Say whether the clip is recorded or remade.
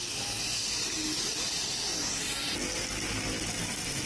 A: recorded